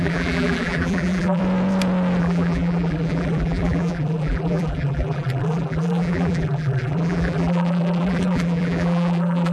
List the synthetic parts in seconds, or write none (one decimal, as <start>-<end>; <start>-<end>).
0.0-1.4; 2.2-9.5